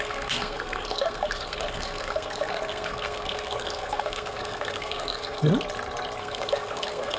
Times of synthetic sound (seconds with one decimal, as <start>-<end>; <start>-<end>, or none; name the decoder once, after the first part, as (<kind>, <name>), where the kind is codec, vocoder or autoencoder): 0.0-5.5 (codec, SNAC); 6.2-7.2